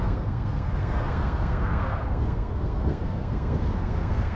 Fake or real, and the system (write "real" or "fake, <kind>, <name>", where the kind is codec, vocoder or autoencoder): fake, codec, SNAC